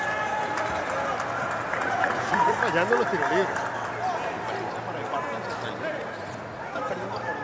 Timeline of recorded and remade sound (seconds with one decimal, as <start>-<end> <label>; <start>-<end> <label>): 0.0-1.4 recorded; 1.4-2.6 remade; 2.6-5.9 recorded; 5.9-6.9 remade; 6.9-7.4 recorded